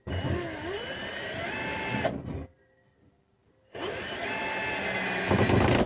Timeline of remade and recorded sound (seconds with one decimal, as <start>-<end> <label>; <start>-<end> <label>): 0.0-5.9 recorded